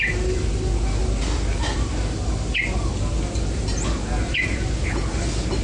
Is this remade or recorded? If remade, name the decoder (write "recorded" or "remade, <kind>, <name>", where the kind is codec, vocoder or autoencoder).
recorded